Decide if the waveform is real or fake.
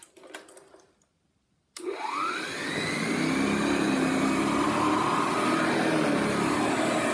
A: real